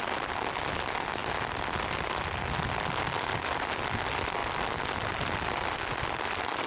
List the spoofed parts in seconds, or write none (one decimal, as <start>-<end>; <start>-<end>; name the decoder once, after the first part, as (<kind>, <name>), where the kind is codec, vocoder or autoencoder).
none

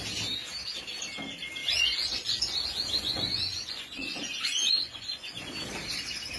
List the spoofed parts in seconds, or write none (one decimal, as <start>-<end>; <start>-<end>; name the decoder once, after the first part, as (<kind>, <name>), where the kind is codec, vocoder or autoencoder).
1.6-5.4 (vocoder, Vocos)

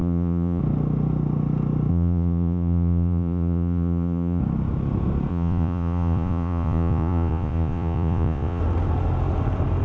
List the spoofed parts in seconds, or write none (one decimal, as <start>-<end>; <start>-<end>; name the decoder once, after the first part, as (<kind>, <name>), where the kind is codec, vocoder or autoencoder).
0.0-0.6 (vocoder, Vocos); 1.9-4.4; 5.3-8.6

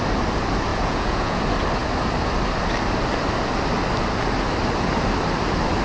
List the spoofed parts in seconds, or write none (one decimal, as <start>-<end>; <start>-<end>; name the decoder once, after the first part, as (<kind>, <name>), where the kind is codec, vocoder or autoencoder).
0.7-1.4 (vocoder, Vocos)

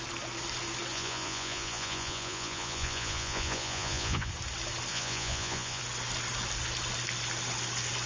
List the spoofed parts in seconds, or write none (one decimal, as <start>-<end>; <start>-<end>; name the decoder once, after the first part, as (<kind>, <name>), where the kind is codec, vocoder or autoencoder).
0.9-4.3 (vocoder, Vocos); 4.9-5.8

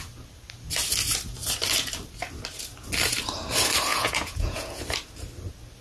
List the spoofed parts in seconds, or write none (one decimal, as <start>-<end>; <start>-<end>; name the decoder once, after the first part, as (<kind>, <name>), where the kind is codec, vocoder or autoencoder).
3.9-4.8 (vocoder, Vocos)

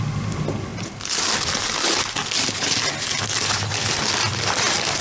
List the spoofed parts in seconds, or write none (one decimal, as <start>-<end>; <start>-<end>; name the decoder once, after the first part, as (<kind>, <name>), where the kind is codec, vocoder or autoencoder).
none

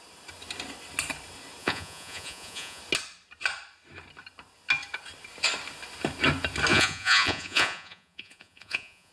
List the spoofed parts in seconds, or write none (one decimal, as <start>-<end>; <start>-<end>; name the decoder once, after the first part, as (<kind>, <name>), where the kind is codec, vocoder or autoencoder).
1.6-2.8 (vocoder, Vocos); 6.7-9.1